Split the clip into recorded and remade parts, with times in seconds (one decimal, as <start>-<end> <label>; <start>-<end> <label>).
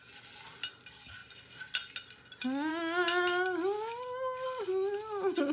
0.0-5.5 recorded